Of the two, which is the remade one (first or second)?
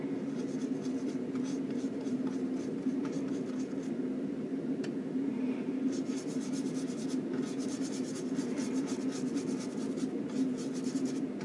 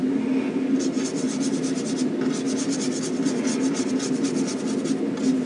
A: first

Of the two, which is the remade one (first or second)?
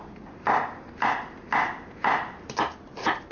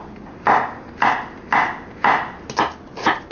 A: first